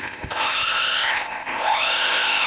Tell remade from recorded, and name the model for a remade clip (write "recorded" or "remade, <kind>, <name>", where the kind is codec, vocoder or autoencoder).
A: remade, codec, ZipCodec